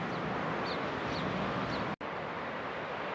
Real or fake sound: real